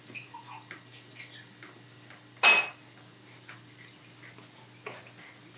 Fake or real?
real